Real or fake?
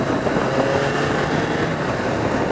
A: real